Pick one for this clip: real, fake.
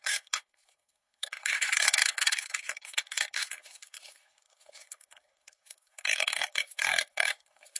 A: fake